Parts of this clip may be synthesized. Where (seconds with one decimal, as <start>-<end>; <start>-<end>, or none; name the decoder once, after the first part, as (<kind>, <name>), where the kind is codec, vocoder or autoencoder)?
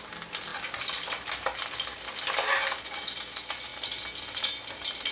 none